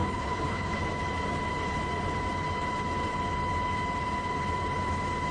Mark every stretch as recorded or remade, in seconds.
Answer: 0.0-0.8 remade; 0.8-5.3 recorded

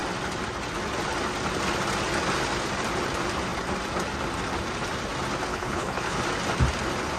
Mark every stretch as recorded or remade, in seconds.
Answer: 0.0-5.5 recorded; 5.5-6.2 remade; 6.2-7.2 recorded

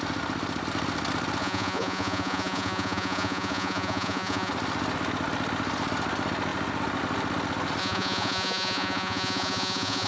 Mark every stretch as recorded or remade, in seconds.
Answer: 0.0-1.4 recorded; 1.4-4.5 remade; 4.5-7.8 recorded; 7.8-10.1 remade

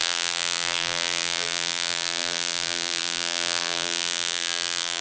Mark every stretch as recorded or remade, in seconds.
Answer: 0.0-5.0 remade

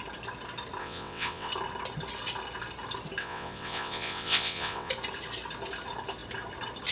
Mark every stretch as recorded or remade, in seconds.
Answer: 0.0-0.8 recorded; 0.8-1.5 remade; 1.5-3.2 recorded; 3.2-4.9 remade; 4.9-6.9 recorded

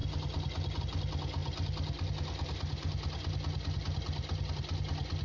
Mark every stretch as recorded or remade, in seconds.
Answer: 0.0-5.2 recorded

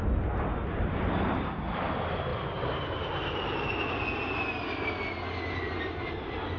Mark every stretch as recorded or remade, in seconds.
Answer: 0.0-6.6 recorded